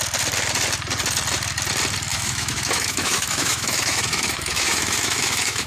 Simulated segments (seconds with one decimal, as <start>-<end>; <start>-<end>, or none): 2.1-5.7